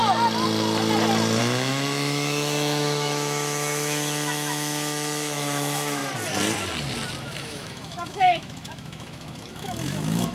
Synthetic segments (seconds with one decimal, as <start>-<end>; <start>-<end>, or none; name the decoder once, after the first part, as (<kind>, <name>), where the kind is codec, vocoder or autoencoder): 1.4-6.0 (autoencoder, DAC-VAE); 7.2-10.3